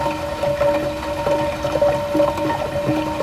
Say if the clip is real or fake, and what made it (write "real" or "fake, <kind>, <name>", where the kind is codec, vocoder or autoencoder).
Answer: real